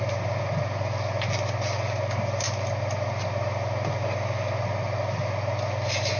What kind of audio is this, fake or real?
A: real